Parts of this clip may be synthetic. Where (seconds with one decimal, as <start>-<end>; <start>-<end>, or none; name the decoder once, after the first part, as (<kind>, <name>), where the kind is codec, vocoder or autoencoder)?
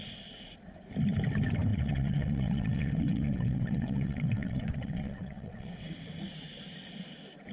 1.7-5.9 (vocoder, WaveNeXt)